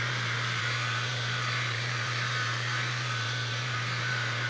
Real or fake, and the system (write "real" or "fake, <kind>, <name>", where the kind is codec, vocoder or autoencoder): fake, vocoder, BigVGAN v2